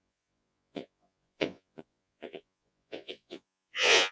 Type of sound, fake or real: fake